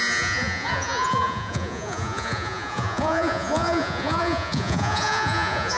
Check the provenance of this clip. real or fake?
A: fake